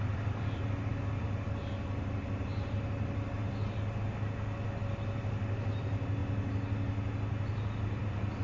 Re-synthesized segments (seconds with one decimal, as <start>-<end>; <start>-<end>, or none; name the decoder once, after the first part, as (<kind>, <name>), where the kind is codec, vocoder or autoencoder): none